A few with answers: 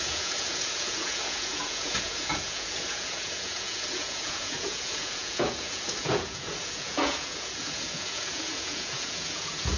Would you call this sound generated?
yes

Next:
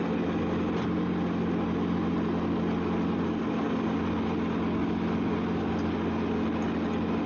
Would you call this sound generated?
no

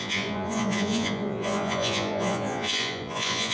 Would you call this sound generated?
yes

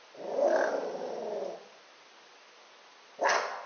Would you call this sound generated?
no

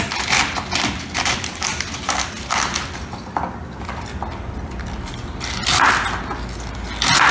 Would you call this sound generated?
no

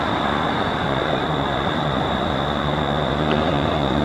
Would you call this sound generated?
yes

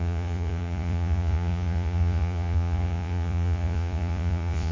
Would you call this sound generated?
yes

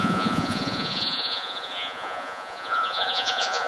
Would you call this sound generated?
yes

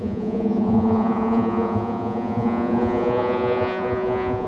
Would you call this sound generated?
yes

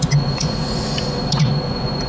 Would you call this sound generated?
yes